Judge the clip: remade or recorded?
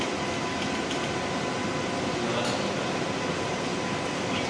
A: recorded